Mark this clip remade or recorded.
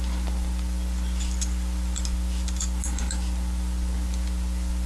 recorded